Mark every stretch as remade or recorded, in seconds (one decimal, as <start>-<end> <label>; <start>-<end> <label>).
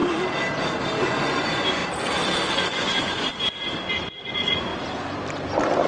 0.0-1.0 recorded; 1.0-1.8 remade; 1.8-2.6 recorded; 2.6-3.3 remade; 3.3-4.2 recorded; 4.2-4.7 remade; 4.7-5.9 recorded